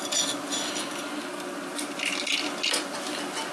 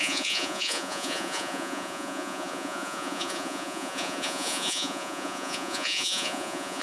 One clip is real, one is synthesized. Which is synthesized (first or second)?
second